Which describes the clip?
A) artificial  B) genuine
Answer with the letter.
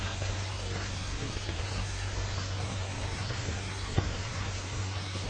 A